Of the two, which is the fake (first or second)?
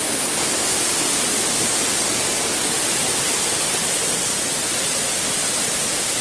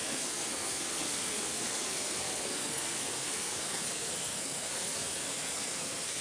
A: second